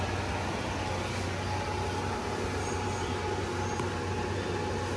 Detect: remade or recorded recorded